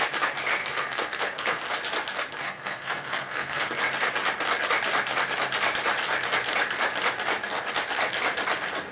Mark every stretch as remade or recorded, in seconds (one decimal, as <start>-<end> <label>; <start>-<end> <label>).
0.0-0.6 recorded; 0.6-1.6 remade; 1.6-2.4 recorded; 2.4-3.7 remade; 3.7-8.9 recorded